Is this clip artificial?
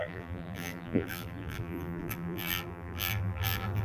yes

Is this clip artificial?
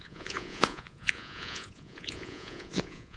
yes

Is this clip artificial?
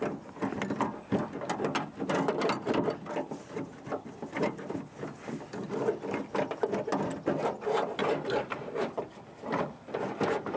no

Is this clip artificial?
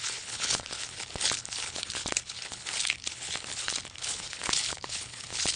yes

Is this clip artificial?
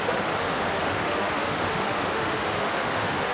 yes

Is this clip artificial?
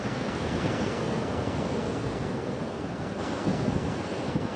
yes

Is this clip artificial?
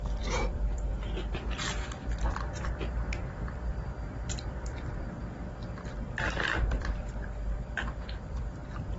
yes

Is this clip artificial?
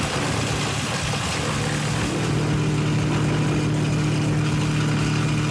no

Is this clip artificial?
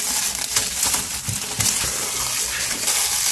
no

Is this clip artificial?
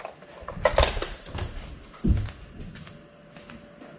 no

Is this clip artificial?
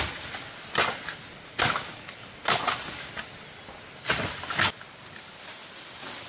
no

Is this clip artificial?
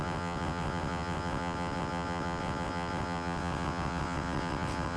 yes